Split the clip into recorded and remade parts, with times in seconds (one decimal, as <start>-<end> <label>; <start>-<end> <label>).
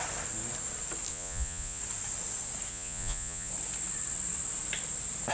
0.0-1.1 recorded; 1.1-1.8 remade; 1.8-2.7 recorded; 2.7-3.5 remade; 3.5-5.3 recorded